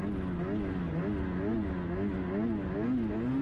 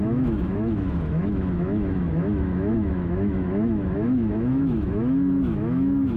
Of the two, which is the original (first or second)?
first